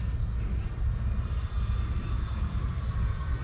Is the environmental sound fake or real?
real